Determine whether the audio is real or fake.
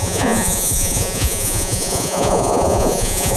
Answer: fake